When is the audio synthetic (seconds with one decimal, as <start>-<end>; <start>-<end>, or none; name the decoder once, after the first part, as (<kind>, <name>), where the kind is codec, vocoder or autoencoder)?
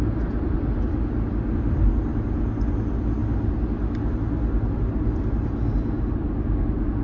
none